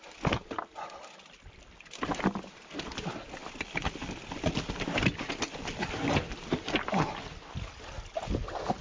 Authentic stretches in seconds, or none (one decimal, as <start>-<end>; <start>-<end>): 0.0-8.8